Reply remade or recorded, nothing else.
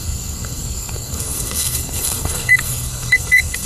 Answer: remade